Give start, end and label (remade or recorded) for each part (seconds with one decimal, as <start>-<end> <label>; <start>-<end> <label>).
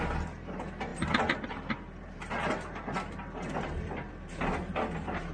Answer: 0.0-5.3 recorded